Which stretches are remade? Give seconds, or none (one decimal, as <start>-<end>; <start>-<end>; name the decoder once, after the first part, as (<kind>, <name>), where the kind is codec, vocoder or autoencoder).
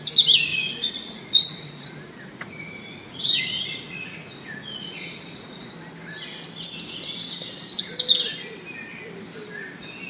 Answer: 0.5-5.7 (vocoder, Vocos)